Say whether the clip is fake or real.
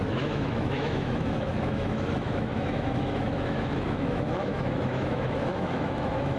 fake